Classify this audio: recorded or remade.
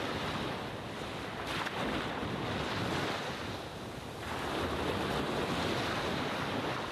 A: recorded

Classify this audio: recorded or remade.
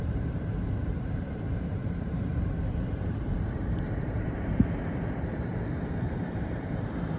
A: remade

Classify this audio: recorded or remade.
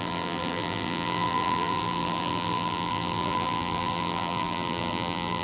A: remade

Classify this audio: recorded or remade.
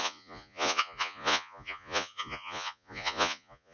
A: remade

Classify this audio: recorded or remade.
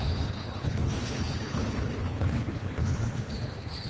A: remade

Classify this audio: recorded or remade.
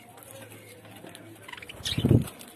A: recorded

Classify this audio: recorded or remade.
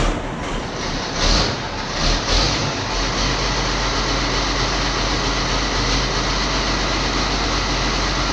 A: recorded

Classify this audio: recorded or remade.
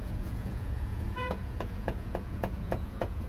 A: remade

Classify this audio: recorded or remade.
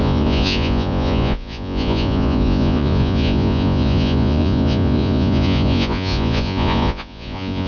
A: remade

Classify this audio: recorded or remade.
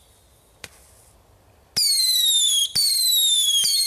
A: recorded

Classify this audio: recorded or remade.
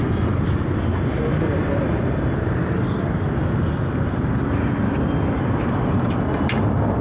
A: recorded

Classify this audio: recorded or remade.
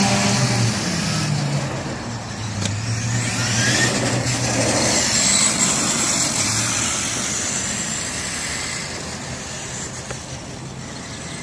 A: remade